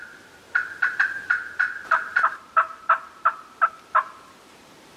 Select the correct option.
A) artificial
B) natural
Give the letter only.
A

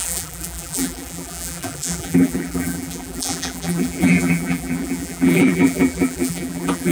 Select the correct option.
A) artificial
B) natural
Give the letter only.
A